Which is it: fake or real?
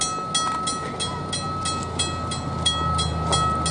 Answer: real